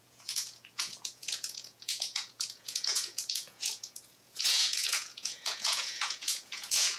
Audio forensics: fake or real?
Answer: fake